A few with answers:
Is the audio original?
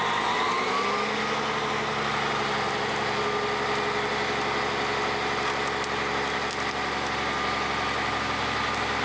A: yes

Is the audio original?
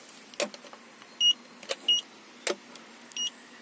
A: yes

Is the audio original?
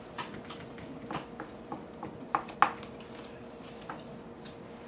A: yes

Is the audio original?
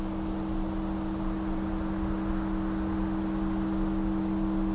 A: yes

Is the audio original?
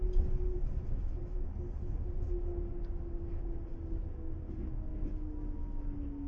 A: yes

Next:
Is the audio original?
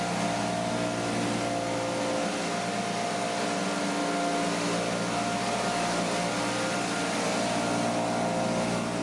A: yes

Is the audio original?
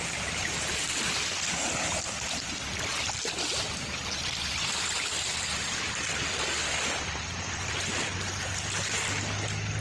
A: yes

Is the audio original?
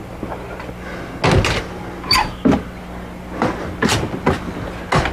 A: yes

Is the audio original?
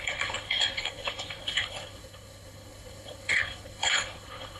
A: no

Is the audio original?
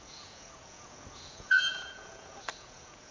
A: no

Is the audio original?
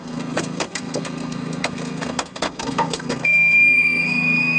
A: no